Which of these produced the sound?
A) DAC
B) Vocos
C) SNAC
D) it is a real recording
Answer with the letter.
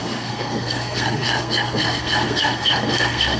C